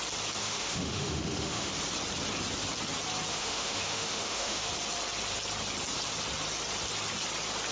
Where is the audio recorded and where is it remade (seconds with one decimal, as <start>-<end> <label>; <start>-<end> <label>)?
0.0-0.4 recorded; 0.4-1.7 remade; 1.7-3.3 recorded; 3.3-4.7 remade; 4.7-7.7 recorded